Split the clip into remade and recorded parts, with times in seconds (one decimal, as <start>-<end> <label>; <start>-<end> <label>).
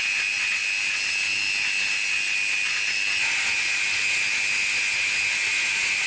0.0-6.1 recorded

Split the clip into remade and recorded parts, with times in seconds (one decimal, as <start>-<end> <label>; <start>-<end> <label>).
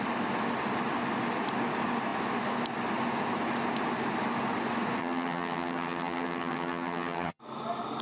0.0-5.0 recorded; 5.0-7.4 remade; 7.4-8.0 recorded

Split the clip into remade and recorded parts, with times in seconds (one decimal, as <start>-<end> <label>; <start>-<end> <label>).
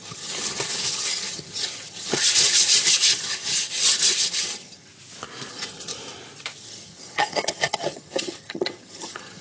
0.0-4.9 remade; 4.9-5.5 recorded; 5.5-5.9 remade; 5.9-6.6 recorded; 6.6-9.4 remade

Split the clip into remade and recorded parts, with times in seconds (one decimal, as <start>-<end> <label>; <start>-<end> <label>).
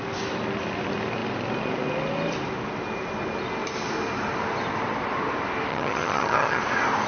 0.0-5.7 recorded; 5.7-6.6 remade; 6.6-7.1 recorded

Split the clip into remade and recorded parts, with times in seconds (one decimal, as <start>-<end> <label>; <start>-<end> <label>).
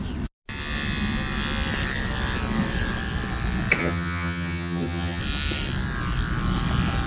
0.0-3.8 recorded; 3.8-5.2 remade; 5.2-7.1 recorded